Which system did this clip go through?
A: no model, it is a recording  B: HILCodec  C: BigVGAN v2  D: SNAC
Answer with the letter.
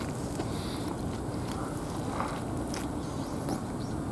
A